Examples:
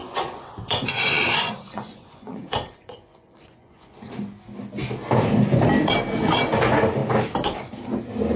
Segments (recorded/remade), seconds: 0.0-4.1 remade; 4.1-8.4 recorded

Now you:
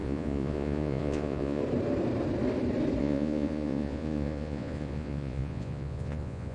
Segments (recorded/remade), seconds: 0.0-1.6 remade; 1.6-3.0 recorded; 3.0-6.5 remade

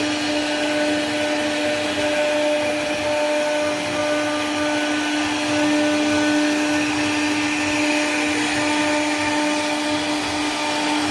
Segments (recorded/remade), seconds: 0.0-11.1 recorded

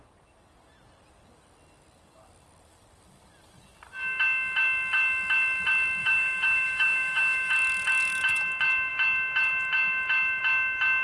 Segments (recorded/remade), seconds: 0.0-6.0 recorded; 6.0-7.5 remade; 7.5-11.0 recorded

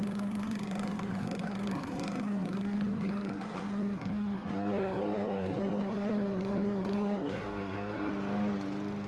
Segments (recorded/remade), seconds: 0.0-8.1 remade; 8.1-9.1 recorded

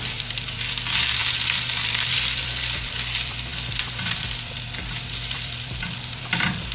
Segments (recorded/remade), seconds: 0.0-6.7 remade